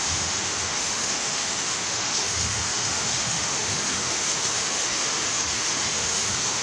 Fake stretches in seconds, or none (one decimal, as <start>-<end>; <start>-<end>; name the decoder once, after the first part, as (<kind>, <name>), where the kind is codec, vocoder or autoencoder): 0.0-6.6 (autoencoder, DAC-VAE)